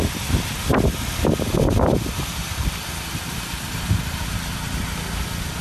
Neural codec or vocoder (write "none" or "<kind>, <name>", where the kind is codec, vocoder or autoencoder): none